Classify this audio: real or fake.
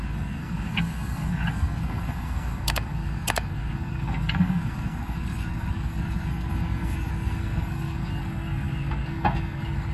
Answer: fake